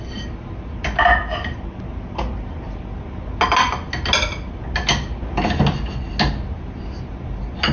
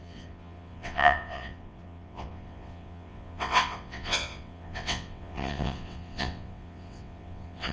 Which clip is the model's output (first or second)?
second